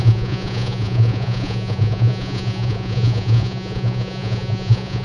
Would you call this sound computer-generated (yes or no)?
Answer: yes